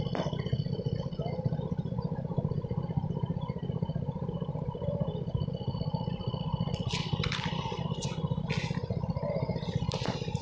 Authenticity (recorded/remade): recorded